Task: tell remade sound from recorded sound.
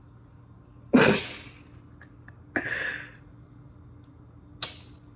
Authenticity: recorded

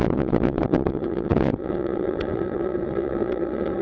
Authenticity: remade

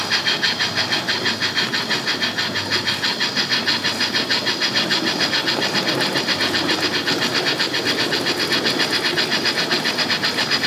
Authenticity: recorded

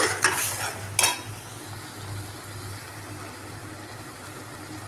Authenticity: recorded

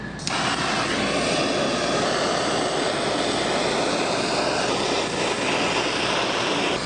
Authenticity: recorded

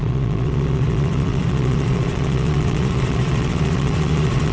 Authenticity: remade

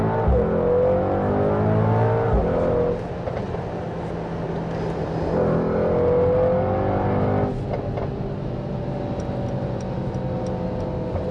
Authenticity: recorded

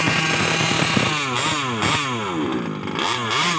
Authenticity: recorded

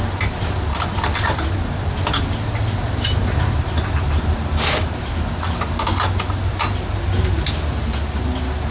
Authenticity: recorded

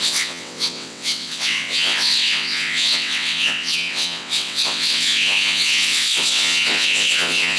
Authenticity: remade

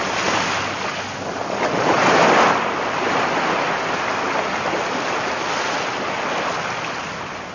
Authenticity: recorded